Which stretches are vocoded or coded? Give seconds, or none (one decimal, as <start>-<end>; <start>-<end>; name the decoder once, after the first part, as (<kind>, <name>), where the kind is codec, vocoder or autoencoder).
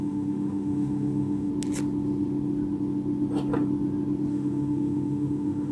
0.0-1.5 (autoencoder, DAC-VAE); 4.3-5.7